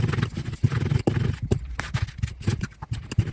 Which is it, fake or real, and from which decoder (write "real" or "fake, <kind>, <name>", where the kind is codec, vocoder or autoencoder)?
real